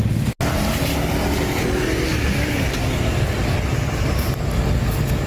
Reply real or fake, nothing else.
real